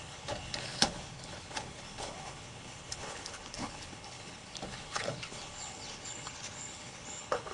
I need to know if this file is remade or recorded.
remade